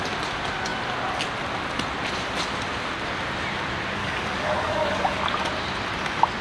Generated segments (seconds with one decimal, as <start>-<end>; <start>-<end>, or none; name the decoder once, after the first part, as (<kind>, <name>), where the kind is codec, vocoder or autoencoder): 4.0-5.2 (codec, DAC)